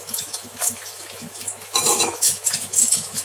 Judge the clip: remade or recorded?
remade